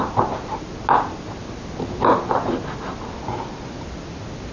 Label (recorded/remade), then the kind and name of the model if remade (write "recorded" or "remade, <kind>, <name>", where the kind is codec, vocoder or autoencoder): recorded